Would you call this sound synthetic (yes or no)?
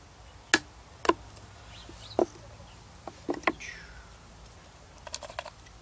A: no